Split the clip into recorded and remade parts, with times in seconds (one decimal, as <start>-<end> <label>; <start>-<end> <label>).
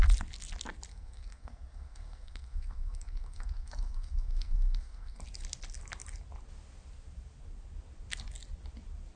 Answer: 0.0-0.9 recorded; 0.9-5.2 remade; 5.2-9.2 recorded